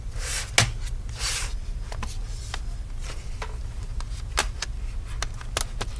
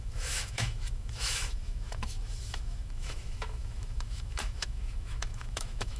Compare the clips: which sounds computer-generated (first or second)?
second